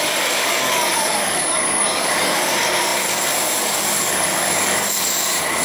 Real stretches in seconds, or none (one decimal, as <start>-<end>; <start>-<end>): none

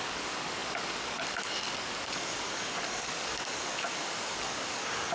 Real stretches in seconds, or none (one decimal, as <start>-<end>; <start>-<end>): none

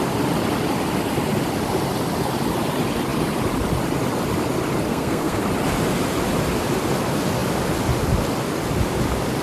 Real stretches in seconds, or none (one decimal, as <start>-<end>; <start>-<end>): 0.0-4.9; 5.4-9.4

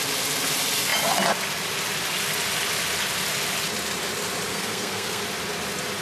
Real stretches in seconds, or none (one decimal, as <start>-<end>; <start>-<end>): 0.0-4.5; 5.2-6.0

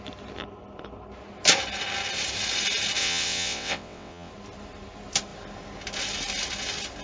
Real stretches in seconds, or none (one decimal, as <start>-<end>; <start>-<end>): 0.0-3.0; 4.3-7.0

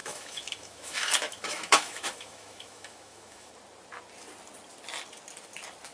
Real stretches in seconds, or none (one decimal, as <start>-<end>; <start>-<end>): 3.5-5.9